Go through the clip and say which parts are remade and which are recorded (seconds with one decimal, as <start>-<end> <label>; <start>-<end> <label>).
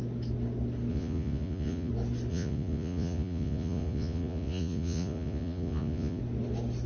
0.0-0.9 recorded; 0.9-1.9 remade; 1.9-2.3 recorded; 2.3-6.2 remade; 6.2-6.9 recorded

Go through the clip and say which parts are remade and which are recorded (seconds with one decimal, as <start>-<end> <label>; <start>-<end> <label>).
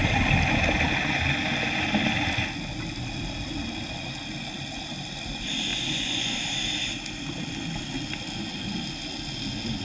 0.0-5.7 recorded; 5.7-6.4 remade; 6.4-9.8 recorded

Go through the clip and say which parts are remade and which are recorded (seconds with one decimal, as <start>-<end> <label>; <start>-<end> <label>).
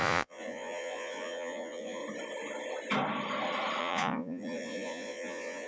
0.0-2.0 remade; 2.0-3.8 recorded; 3.8-5.7 remade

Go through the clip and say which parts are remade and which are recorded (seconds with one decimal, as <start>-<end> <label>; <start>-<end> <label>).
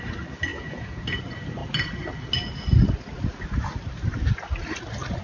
0.0-0.5 recorded; 0.5-1.2 remade; 1.2-5.2 recorded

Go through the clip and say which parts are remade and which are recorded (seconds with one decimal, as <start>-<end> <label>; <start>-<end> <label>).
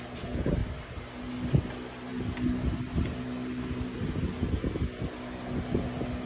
0.0-6.3 recorded